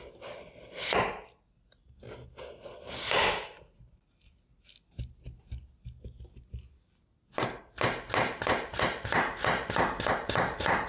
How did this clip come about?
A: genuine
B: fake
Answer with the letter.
A